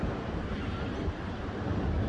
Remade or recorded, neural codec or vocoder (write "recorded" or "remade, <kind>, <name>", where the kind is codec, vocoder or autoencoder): recorded